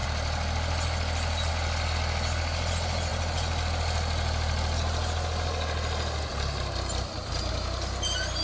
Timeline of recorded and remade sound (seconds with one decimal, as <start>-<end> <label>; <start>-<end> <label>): 0.0-8.4 recorded